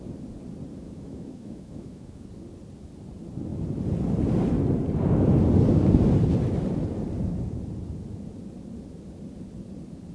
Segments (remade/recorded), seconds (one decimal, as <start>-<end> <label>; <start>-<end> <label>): 0.0-0.7 recorded; 0.7-2.3 remade; 2.3-10.1 recorded